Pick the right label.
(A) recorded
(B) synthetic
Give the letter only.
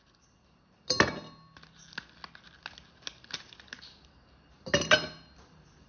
A